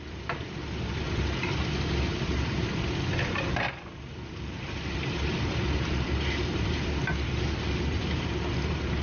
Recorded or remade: remade